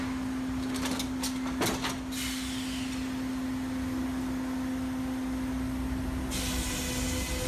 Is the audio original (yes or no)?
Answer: yes